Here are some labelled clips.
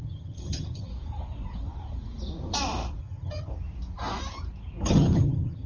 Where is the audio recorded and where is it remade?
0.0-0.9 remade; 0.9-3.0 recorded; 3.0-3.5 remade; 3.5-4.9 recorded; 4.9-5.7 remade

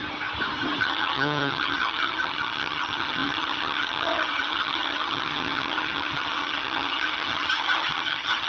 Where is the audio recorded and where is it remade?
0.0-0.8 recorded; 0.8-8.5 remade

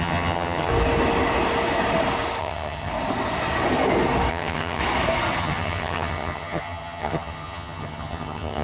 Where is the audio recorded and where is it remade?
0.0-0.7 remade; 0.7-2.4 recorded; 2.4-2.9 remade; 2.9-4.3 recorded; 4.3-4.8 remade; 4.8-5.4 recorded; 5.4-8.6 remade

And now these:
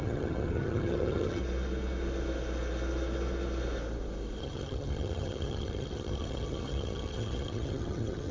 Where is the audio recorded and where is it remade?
0.0-1.4 remade; 1.4-4.4 recorded; 4.4-8.3 remade

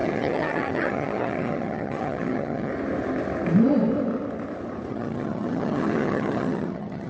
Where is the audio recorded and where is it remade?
0.0-2.7 remade; 2.7-4.9 recorded; 4.9-7.1 remade

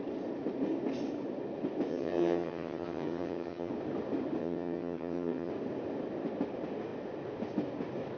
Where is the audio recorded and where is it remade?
0.0-1.9 recorded; 1.9-3.7 remade; 3.7-4.4 recorded; 4.4-5.5 remade; 5.5-8.2 recorded

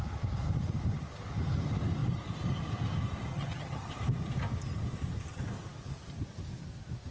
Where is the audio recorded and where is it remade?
0.0-3.3 recorded; 3.3-3.9 remade; 3.9-7.1 recorded